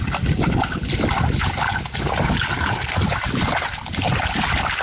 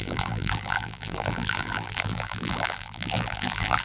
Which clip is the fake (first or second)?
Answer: second